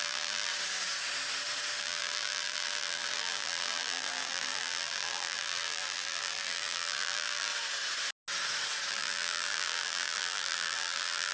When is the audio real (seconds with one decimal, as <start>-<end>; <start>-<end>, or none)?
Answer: 0.5-1.8; 7.5-8.9